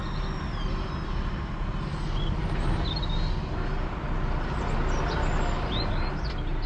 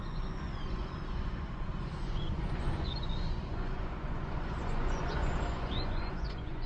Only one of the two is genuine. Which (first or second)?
first